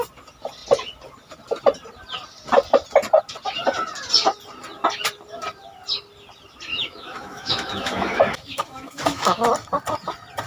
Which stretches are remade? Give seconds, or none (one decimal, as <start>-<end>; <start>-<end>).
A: 6.7-9.5